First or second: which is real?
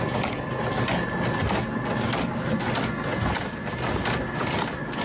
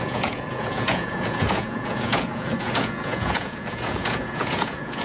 first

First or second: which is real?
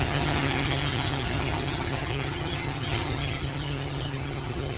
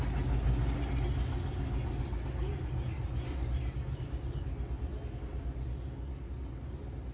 second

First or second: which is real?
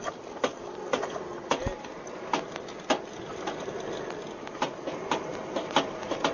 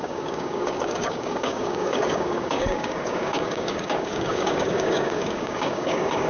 first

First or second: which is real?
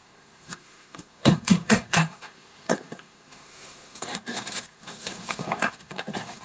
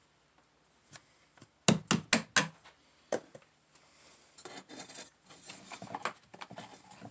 second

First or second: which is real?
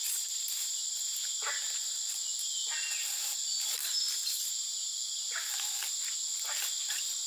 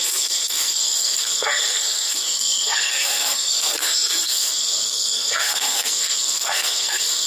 first